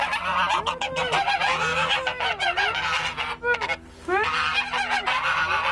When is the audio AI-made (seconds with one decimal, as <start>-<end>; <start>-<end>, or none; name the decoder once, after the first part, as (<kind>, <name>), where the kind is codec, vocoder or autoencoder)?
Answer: none

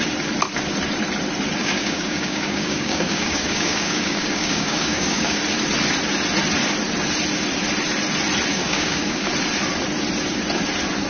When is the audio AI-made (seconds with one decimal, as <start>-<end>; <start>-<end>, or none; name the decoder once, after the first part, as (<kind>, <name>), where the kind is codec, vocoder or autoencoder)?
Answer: 1.6-5.4 (codec, DAC); 8.5-9.3

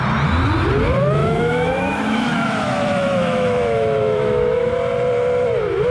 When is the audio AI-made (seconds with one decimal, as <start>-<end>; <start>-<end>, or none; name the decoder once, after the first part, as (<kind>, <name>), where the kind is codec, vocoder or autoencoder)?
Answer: 1.2-4.7 (autoencoder, DAC-VAE)

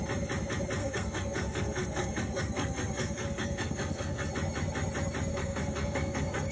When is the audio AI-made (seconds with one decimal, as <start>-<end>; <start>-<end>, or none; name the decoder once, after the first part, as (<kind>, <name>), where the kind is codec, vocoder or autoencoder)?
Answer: 0.8-4.3 (codec, SNAC); 5.3-6.5

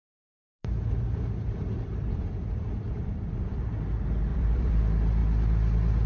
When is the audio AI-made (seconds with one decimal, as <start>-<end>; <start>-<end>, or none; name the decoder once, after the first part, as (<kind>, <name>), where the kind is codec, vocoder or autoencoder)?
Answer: 0.0-3.7 (vocoder, BigVGAN v2); 4.3-4.8

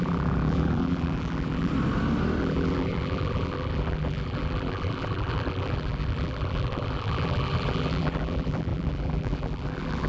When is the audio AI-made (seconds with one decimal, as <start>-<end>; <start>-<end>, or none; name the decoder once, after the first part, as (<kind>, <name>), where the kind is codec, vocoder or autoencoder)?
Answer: 0.0-1.7 (vocoder, BigVGAN v2); 2.4-10.1

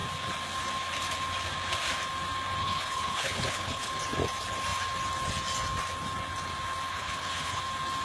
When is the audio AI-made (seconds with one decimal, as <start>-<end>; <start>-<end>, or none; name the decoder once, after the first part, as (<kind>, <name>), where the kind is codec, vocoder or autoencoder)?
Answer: 2.6-3.9 (codec, HILCodec); 6.9-7.6